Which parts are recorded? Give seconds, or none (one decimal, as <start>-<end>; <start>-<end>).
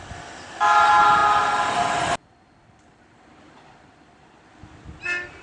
0.0-5.4